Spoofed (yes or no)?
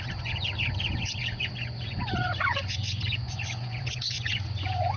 yes